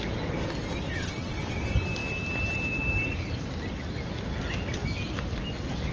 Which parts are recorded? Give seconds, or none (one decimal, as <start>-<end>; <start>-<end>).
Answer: 0.0-0.9; 1.5-5.9